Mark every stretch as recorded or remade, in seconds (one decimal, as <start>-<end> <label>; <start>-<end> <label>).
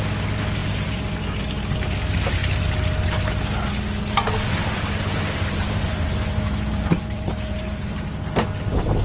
0.0-0.6 recorded; 0.6-1.4 remade; 1.4-4.6 recorded; 4.6-8.2 remade; 8.2-9.0 recorded